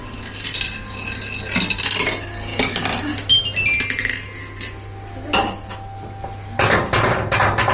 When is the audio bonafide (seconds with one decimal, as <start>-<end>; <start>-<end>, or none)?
0.0-7.7